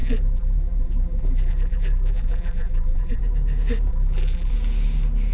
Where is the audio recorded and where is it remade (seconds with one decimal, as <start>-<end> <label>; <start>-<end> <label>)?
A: 0.0-3.2 remade; 3.2-3.9 recorded; 3.9-4.5 remade; 4.5-5.3 recorded